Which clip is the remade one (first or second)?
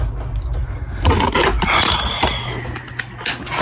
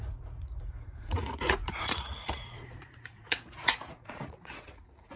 second